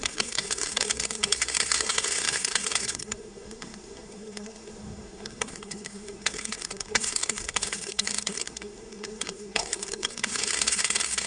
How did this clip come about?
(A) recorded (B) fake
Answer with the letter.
B